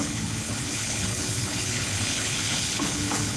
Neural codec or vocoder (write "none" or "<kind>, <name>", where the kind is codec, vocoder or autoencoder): codec, HILCodec